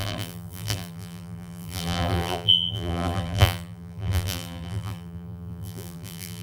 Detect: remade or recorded remade